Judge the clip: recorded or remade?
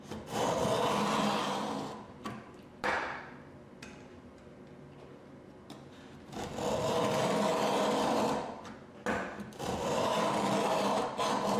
recorded